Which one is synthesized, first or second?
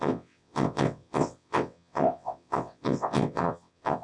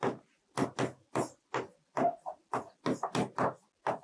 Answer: first